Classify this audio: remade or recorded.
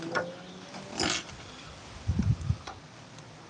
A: recorded